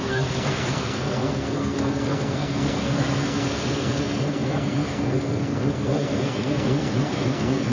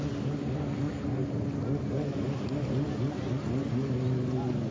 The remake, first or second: first